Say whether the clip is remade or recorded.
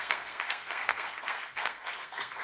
remade